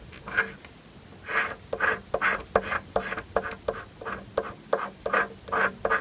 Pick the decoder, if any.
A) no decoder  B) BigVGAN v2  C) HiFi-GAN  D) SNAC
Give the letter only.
A